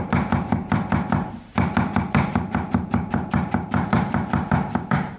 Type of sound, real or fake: fake